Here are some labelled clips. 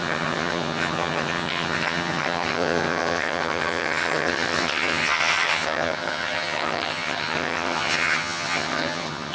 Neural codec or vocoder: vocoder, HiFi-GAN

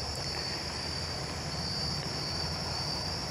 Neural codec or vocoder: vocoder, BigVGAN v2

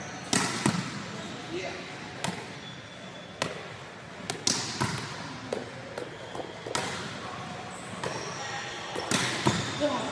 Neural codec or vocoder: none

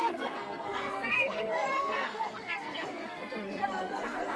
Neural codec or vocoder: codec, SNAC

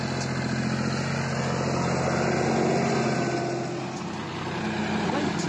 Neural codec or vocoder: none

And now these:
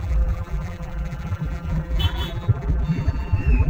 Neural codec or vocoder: vocoder, BigVGAN v2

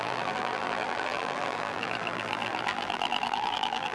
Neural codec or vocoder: vocoder, BigVGAN v2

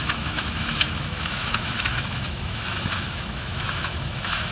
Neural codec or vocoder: autoencoder, DAC-VAE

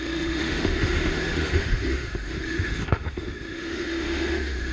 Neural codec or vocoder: autoencoder, DAC-VAE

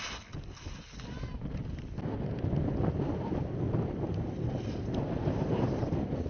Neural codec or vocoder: none